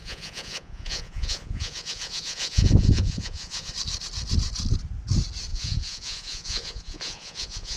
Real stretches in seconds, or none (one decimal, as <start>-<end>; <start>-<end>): 3.7-5.5